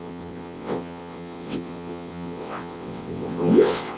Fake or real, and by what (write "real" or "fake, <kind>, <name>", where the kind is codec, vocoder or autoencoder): fake, vocoder, WaveNeXt